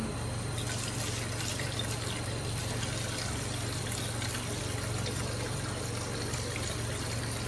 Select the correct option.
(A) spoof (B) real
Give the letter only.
B